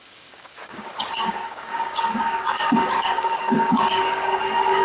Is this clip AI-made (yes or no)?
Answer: yes